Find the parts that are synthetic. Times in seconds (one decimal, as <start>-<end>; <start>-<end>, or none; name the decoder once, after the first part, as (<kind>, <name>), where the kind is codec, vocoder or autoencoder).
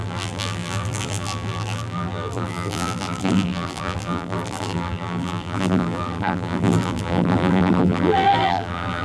0.0-9.0 (vocoder, BigVGAN v2)